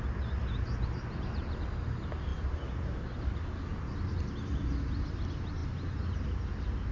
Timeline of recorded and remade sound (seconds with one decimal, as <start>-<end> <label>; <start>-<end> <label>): 0.0-6.9 recorded